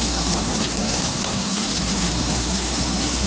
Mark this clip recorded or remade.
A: remade